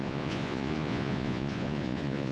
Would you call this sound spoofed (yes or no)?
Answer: yes